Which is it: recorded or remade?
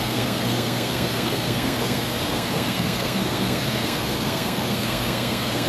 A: remade